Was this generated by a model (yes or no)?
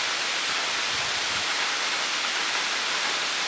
no